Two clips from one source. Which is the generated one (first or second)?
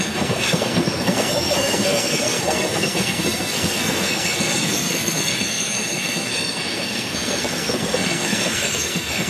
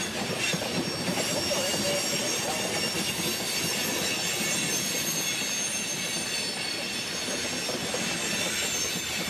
first